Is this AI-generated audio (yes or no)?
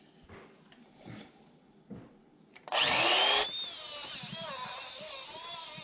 no